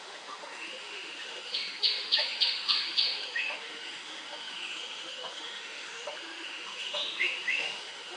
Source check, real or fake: fake